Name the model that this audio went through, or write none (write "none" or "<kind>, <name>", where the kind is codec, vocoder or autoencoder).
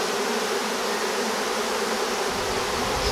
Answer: none